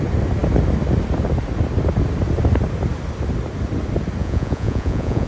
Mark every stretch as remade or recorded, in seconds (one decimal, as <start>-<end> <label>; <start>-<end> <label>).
0.0-4.2 recorded; 4.2-5.3 remade

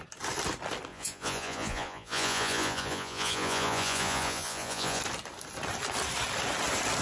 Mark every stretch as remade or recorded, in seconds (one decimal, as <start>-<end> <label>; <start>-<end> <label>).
0.0-0.9 recorded; 0.9-5.0 remade; 5.0-7.0 recorded

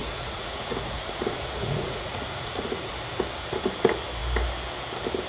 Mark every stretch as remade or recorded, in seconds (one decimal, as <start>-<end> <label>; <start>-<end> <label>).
0.0-2.9 remade; 2.9-5.3 recorded

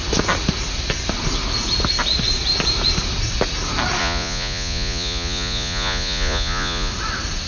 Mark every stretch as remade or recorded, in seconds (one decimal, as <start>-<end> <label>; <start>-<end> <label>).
0.0-4.0 recorded; 4.0-6.9 remade; 6.9-7.5 recorded

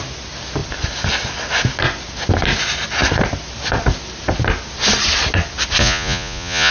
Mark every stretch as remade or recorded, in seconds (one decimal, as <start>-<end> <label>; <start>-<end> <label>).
0.0-5.8 recorded; 5.8-6.7 remade

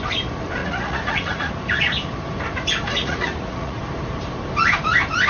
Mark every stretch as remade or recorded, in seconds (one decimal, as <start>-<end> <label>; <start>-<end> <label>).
0.0-0.6 recorded; 0.6-1.5 remade; 1.5-3.0 recorded; 3.0-3.8 remade; 3.8-5.3 recorded